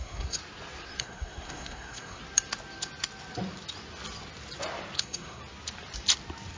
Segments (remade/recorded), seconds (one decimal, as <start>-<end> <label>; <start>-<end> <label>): 0.0-0.4 remade; 0.4-1.0 recorded; 1.0-2.2 remade; 2.2-5.0 recorded; 5.0-5.4 remade; 5.4-6.6 recorded